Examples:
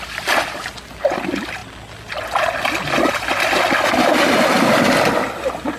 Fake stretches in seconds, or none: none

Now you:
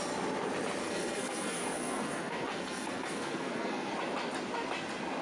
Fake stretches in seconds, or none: 0.8-3.9 (codec, SNAC)

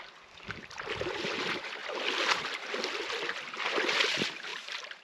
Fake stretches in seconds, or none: 4.5-5.0 (vocoder, BigVGAN v2)

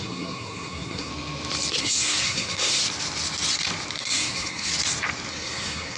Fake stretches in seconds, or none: 0.0-1.1 (codec, SNAC); 1.8-2.8; 4.0-4.7; 5.3-6.0

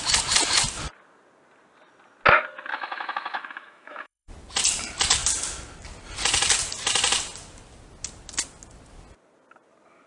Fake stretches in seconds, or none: 2.7-4.3 (autoencoder, DAC-VAE)

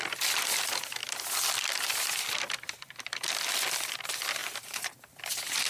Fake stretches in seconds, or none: 4.4-5.2 (vocoder, BigVGAN v2)

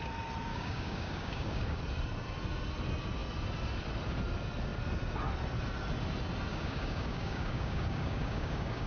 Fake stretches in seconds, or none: 0.5-1.8 (codec, DAC); 6.5-8.9

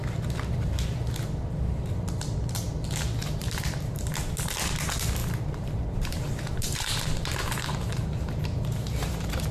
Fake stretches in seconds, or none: 3.2-4.2 (vocoder, BigVGAN v2); 5.2-9.5